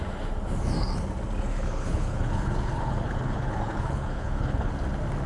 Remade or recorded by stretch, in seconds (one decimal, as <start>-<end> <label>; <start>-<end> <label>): 0.0-1.5 recorded; 1.5-4.7 remade; 4.7-5.3 recorded